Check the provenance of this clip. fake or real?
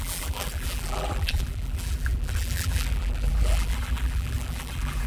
fake